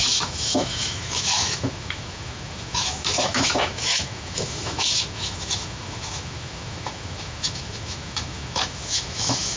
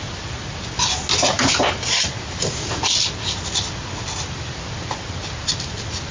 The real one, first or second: second